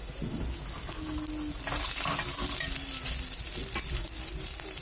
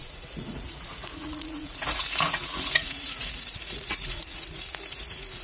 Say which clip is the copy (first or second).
second